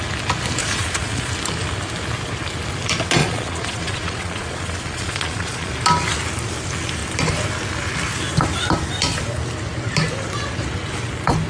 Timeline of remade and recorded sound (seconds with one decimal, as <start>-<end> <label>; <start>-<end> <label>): 0.0-0.6 recorded; 0.6-1.3 remade; 1.3-3.2 recorded; 3.2-5.7 remade; 5.7-11.5 recorded